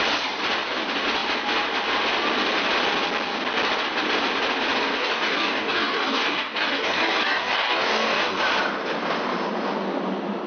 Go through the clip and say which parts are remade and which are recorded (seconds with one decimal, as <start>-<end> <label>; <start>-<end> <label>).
0.0-5.0 recorded; 5.0-8.4 remade; 8.4-10.5 recorded